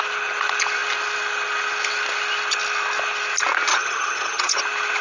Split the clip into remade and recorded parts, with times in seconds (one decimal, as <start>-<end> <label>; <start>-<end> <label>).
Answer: 0.0-3.7 recorded; 3.7-4.6 remade; 4.6-5.0 recorded